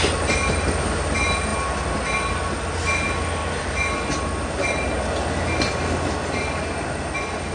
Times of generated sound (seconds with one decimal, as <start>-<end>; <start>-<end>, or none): none